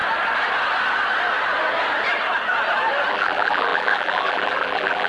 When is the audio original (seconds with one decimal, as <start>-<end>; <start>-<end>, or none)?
0.0-3.1